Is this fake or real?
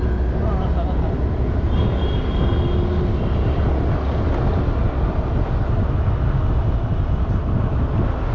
real